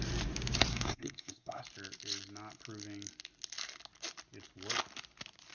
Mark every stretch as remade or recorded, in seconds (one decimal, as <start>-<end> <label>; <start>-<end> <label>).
0.0-0.7 recorded; 0.7-1.6 remade; 1.6-5.5 recorded